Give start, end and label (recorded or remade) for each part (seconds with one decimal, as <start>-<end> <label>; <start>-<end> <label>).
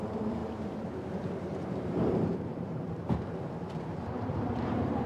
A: 0.0-5.1 remade